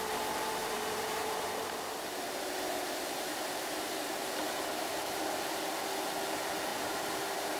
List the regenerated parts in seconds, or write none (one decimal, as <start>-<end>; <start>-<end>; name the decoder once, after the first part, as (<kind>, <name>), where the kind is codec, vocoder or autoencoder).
0.6-5.2 (vocoder, BigVGAN v2); 6.7-7.6